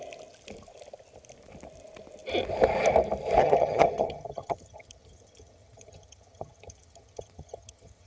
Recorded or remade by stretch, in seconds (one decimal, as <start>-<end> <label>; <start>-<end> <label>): 0.0-3.4 recorded; 3.4-8.1 remade